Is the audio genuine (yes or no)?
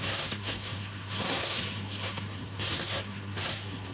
no